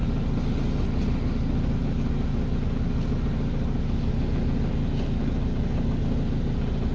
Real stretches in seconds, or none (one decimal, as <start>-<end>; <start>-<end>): 0.0-6.9